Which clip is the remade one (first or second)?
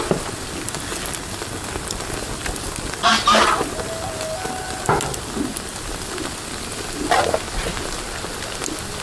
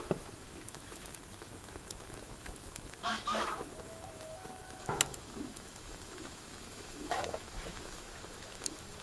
second